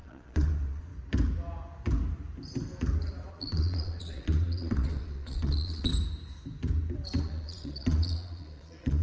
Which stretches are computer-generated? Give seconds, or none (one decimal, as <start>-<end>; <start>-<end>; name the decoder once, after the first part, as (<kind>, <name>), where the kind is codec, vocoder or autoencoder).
0.0-0.9 (vocoder, Vocos); 3.3-5.9; 7.2-9.0